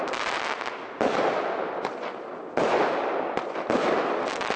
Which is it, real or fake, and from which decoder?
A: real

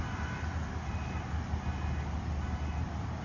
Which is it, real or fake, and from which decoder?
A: real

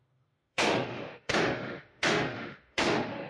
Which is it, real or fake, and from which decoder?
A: fake, autoencoder, DAC-VAE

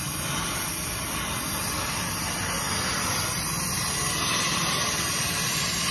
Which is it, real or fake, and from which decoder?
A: real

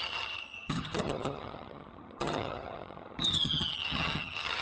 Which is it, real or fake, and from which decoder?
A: fake, vocoder, HiFi-GAN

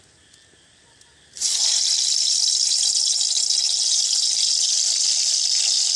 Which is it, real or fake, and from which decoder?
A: real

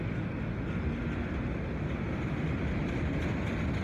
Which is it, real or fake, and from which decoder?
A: real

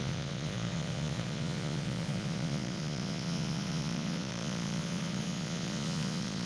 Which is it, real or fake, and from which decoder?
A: fake, vocoder, Vocos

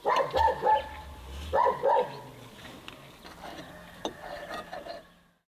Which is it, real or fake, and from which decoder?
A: real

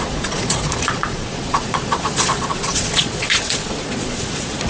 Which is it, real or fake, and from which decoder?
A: fake, vocoder, Vocos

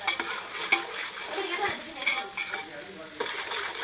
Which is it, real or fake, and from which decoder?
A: real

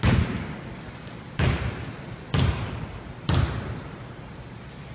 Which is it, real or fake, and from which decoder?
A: real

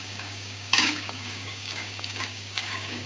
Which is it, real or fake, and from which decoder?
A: fake, codec, DAC